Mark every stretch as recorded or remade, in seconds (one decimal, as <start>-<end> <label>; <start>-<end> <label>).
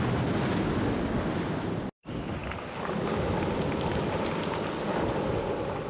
0.0-5.9 recorded